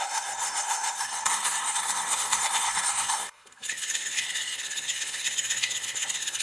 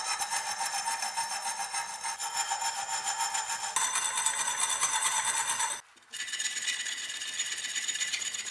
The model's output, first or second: first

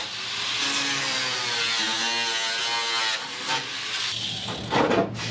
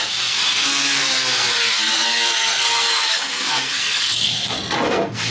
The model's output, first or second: second